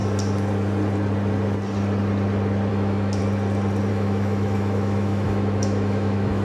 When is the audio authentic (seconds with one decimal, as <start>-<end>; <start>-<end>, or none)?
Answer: 0.0-2.7; 3.2-3.9